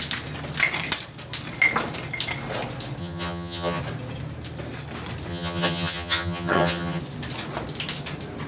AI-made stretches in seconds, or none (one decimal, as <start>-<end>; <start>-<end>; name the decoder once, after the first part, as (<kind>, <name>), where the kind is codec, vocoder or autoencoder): 3.0-3.8 (vocoder, HiFi-GAN); 5.3-7.0